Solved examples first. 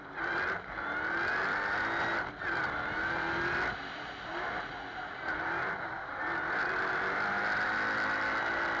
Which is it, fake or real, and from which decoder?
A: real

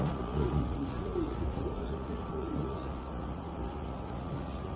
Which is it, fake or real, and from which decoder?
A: fake, vocoder, Vocos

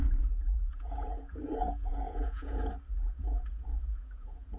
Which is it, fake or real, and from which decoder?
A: fake, vocoder, Vocos